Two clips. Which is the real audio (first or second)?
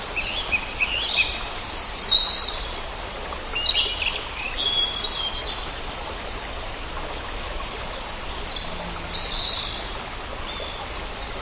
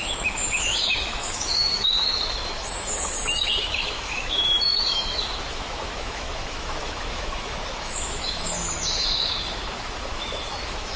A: first